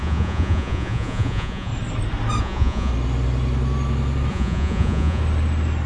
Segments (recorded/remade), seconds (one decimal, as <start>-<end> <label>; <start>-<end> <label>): 0.0-1.7 remade; 1.7-2.4 recorded; 2.4-2.9 remade; 2.9-4.3 recorded; 4.3-5.2 remade; 5.2-5.9 recorded